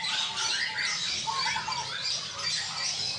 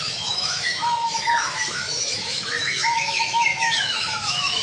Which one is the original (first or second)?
first